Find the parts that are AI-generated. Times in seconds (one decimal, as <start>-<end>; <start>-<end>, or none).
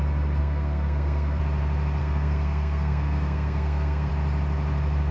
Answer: 0.4-1.4; 2.0-4.1